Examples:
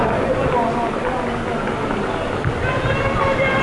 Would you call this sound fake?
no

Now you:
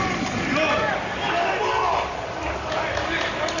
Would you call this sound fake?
no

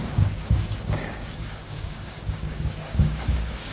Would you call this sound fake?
yes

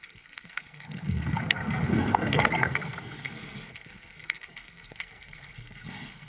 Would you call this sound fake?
yes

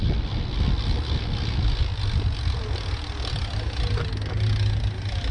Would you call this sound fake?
no